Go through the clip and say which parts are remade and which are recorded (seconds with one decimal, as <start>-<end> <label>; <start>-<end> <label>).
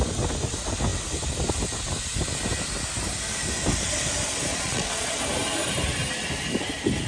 0.0-4.5 recorded; 4.5-5.2 remade; 5.2-7.1 recorded